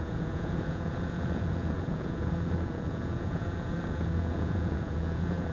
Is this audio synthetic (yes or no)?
yes